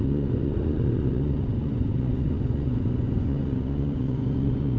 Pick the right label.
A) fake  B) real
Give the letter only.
A